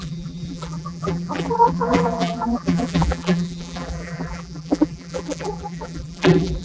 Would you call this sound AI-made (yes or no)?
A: yes